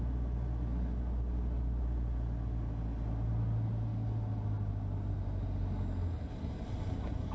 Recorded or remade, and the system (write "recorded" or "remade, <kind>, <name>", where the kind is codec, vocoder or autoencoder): recorded